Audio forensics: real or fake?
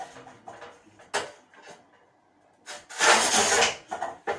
real